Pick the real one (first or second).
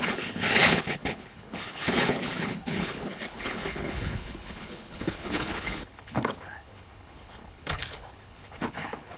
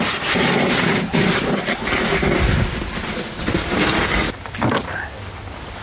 second